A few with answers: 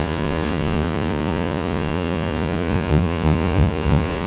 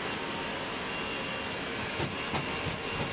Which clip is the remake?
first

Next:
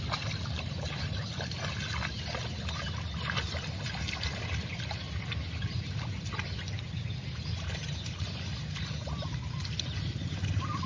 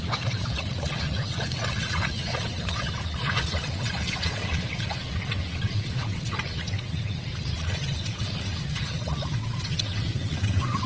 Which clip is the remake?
second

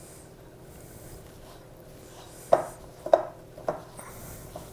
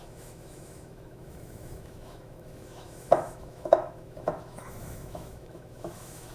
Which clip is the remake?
second